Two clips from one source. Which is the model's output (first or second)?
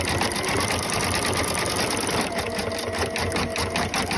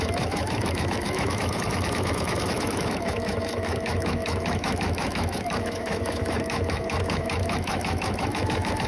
second